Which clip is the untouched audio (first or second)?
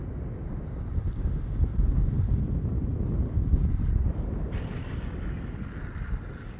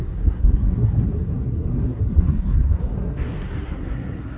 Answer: first